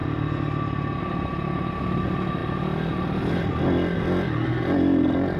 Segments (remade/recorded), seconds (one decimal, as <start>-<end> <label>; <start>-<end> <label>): 0.0-5.4 recorded